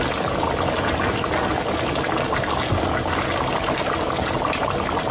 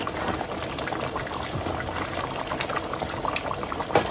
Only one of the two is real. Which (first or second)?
first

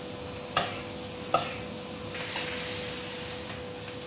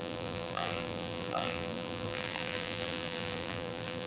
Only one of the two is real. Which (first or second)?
first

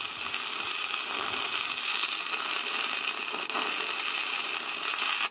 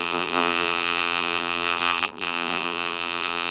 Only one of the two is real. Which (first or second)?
first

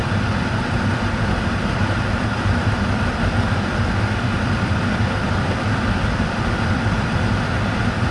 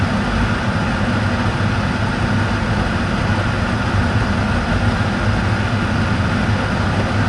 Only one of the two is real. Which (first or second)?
second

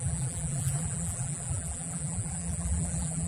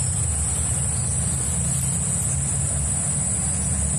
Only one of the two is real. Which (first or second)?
second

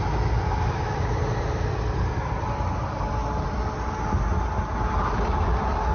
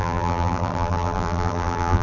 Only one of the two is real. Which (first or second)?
first